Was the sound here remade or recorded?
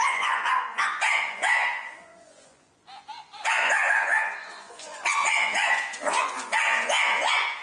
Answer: remade